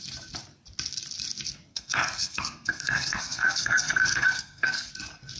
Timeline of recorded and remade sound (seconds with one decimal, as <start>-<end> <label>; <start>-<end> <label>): 0.0-1.7 recorded; 1.7-4.9 remade; 4.9-5.4 recorded